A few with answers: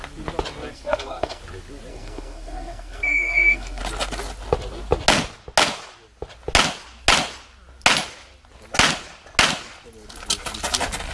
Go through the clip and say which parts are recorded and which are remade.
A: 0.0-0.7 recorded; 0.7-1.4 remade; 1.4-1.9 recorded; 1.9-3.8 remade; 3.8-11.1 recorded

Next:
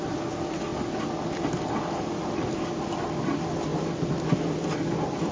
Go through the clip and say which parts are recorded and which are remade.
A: 0.0-5.3 recorded

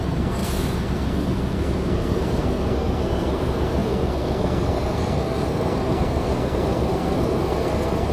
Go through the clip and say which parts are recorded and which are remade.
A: 0.0-8.1 remade

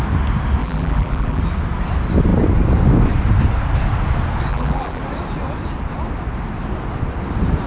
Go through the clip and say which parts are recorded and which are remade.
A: 0.0-0.6 recorded; 0.6-1.4 remade; 1.4-4.5 recorded; 4.5-5.0 remade; 5.0-7.7 recorded